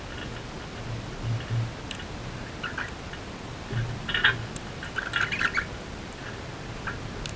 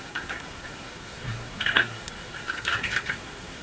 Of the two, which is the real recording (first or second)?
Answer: first